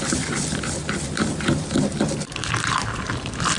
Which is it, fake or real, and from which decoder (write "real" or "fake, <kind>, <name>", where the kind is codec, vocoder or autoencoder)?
fake, vocoder, BigVGAN v2